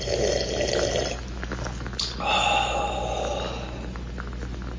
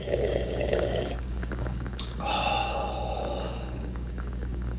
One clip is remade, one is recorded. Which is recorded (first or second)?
first